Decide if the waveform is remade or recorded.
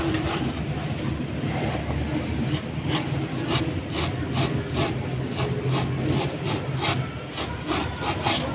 recorded